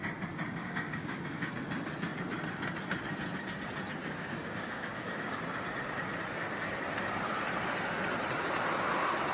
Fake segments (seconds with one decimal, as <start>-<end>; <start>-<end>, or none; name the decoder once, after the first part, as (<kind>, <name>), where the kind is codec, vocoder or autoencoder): 0.6-1.5 (codec, DAC); 4.0-5.4